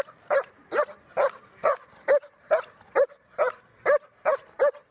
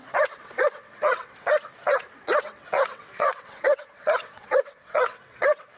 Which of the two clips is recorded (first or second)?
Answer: first